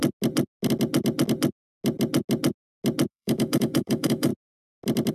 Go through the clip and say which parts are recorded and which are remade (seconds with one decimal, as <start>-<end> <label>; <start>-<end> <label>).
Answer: 0.0-3.1 recorded; 3.1-4.3 remade; 4.3-5.1 recorded

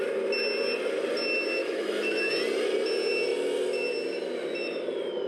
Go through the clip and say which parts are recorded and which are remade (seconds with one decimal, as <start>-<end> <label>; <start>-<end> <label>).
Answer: 0.0-1.6 recorded; 1.6-2.3 remade; 2.3-5.3 recorded

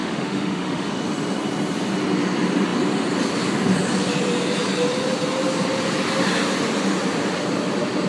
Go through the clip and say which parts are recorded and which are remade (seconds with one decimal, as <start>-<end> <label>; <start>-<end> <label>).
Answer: 0.0-0.9 remade; 0.9-8.1 recorded

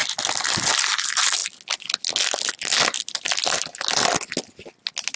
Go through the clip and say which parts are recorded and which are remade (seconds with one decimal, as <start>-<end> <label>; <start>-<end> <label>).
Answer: 0.0-5.2 recorded

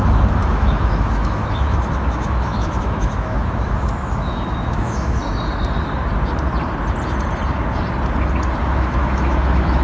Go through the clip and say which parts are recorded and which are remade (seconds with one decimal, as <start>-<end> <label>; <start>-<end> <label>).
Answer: 0.0-5.2 remade; 5.2-8.6 recorded; 8.6-9.8 remade

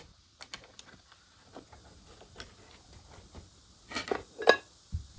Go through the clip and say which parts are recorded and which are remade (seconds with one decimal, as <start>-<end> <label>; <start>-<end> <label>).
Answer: 0.0-5.2 recorded

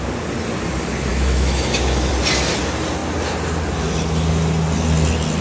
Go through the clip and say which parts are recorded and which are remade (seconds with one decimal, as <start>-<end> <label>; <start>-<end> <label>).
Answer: 0.0-1.1 recorded; 1.1-2.1 remade; 2.1-5.4 recorded